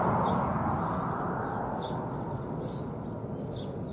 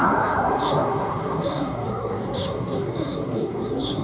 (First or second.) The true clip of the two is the first